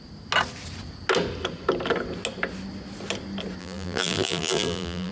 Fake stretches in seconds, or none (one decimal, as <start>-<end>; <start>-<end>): 3.6-5.1